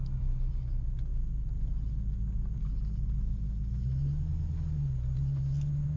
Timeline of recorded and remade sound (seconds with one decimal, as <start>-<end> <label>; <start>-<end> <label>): 0.0-6.0 recorded